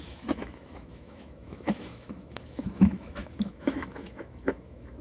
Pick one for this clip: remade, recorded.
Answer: remade